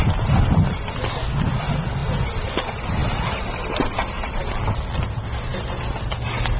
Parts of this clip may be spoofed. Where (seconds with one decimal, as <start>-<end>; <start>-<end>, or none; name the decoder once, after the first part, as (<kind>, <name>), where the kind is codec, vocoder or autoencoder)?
none